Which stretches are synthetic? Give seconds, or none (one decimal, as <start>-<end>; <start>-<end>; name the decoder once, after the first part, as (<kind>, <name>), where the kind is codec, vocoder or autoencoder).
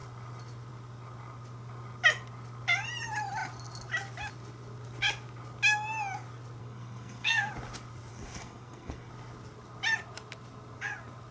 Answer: 6.6-7.5 (codec, SNAC); 8.1-9.1